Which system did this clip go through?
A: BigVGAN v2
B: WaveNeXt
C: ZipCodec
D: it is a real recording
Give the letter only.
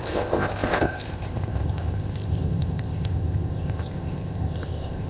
C